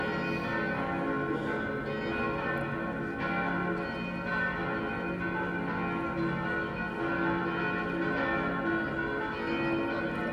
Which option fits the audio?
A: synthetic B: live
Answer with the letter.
B